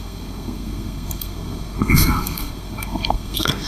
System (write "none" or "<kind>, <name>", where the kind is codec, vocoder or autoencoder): codec, SNAC